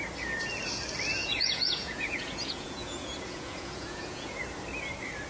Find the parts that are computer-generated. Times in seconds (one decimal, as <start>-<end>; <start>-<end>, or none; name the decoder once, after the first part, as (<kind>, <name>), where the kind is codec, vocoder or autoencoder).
1.2-4.4 (vocoder, Vocos)

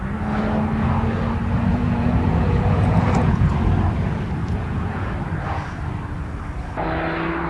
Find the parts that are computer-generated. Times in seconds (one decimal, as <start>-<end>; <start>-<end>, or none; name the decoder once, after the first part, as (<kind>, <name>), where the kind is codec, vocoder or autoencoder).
1.7-3.5 (vocoder, Vocos); 4.4-5.1

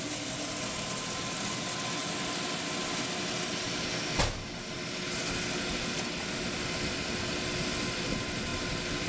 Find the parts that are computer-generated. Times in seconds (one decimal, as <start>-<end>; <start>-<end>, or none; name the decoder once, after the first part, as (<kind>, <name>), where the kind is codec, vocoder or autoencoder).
none

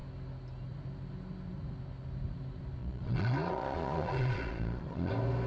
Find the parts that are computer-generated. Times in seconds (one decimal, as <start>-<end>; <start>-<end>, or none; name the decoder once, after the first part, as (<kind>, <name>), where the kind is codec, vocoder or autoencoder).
2.8-5.1 (vocoder, Vocos)